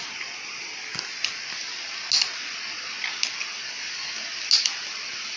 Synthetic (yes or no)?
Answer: no